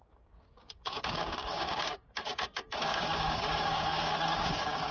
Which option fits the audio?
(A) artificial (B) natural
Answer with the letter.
A